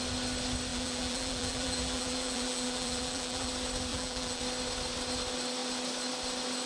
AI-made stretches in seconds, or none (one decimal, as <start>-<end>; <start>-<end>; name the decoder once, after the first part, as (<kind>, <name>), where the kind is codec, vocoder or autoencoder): 0.7-3.5 (vocoder, BigVGAN v2); 3.9-4.4